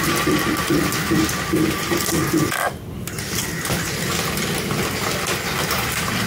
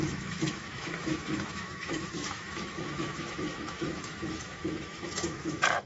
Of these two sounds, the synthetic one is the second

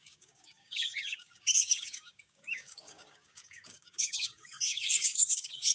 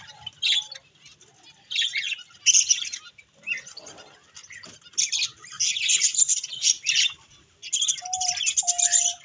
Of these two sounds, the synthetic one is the first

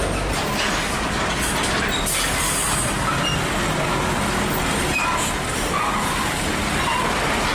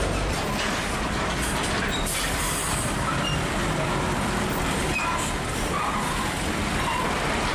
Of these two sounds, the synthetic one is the second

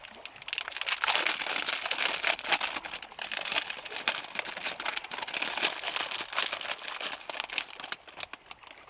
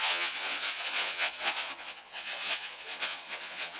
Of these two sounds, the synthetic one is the second